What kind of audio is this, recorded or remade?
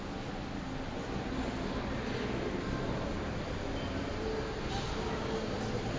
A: recorded